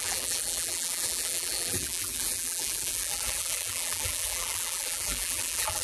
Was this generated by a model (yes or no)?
yes